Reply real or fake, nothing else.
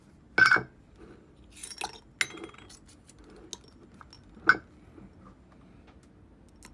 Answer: real